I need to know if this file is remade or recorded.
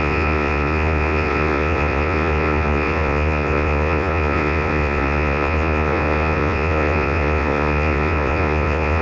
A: remade